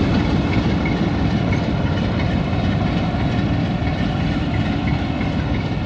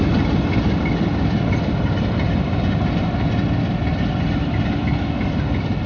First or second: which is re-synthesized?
first